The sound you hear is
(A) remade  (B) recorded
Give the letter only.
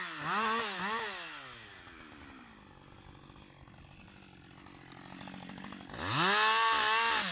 B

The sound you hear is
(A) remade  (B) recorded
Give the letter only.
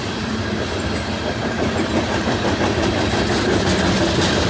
B